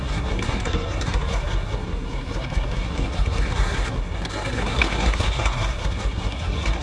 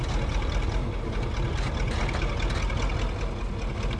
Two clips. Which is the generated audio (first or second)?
first